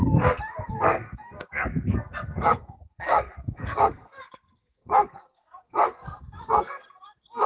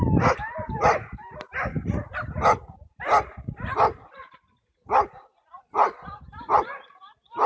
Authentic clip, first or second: second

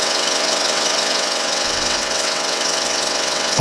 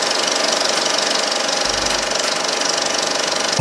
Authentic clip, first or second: second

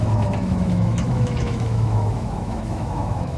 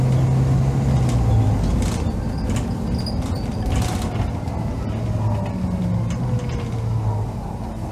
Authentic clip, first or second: second